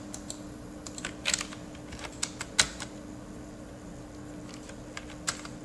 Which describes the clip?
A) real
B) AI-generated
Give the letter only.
A